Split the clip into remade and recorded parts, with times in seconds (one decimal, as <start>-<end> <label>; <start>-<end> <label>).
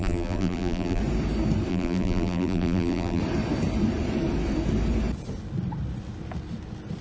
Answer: 0.0-1.0 remade; 1.0-1.7 recorded; 1.7-3.2 remade; 3.2-7.0 recorded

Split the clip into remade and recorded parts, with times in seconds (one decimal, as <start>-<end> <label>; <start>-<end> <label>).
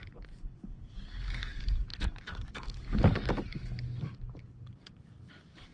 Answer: 0.0-5.7 remade